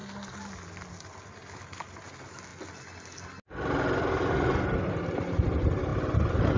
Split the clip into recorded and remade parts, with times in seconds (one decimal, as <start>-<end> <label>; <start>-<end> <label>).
0.0-6.6 recorded